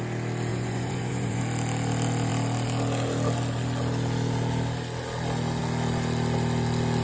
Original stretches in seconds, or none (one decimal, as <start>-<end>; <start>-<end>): 0.0-0.5; 1.4-7.0